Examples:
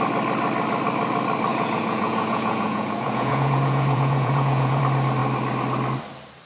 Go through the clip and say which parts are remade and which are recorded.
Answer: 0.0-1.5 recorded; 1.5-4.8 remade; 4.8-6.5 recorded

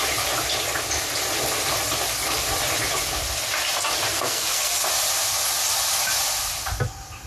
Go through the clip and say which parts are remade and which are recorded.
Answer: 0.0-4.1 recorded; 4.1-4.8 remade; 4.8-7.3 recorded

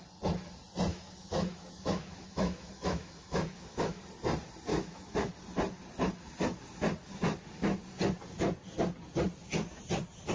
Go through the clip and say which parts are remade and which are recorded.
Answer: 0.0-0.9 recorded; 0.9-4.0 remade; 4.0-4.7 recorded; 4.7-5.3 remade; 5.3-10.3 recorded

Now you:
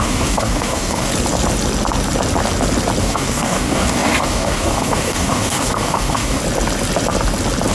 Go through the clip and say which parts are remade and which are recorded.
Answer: 0.0-1.1 remade; 1.1-3.0 recorded; 3.0-6.4 remade; 6.4-7.7 recorded

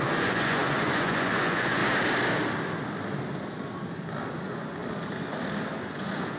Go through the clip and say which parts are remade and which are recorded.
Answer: 0.0-1.8 remade; 1.8-4.3 recorded; 4.3-4.8 remade; 4.8-5.7 recorded; 5.7-6.4 remade

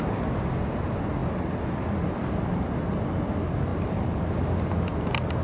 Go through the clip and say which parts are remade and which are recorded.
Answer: 0.0-5.4 recorded

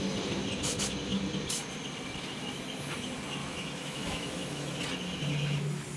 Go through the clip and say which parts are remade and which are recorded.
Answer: 0.0-3.4 recorded; 3.4-4.8 remade; 4.8-6.0 recorded

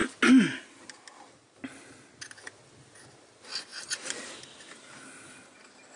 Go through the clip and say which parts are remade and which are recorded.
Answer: 0.0-6.0 recorded